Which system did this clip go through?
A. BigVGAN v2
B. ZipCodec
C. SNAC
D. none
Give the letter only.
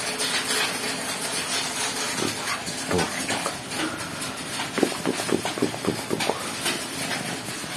D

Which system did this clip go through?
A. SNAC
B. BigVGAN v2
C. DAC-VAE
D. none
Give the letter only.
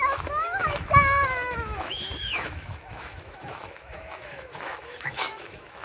C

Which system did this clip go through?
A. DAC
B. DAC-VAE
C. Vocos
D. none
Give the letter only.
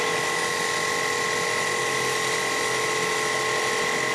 D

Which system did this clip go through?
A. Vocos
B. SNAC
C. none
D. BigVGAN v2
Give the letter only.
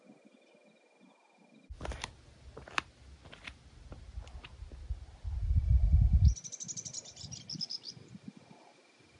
C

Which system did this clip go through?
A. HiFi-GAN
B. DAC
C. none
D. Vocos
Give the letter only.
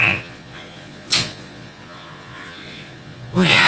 D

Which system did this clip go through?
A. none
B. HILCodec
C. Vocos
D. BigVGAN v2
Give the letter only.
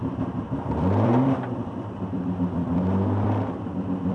D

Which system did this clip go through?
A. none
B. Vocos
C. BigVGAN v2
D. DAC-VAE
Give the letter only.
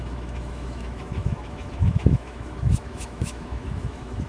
D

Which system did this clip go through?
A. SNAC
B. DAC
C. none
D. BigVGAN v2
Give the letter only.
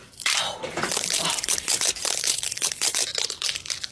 D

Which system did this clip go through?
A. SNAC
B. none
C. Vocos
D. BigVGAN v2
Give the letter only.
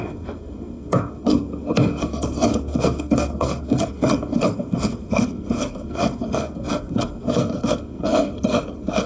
A